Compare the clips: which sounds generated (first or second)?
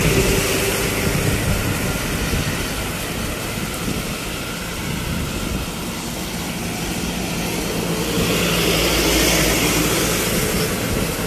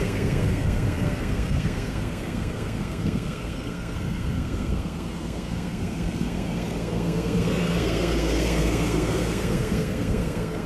second